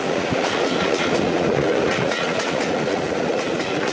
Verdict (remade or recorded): remade